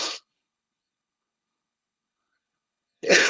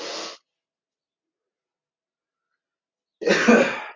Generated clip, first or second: first